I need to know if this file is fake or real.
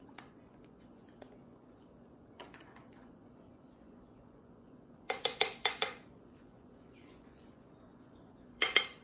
fake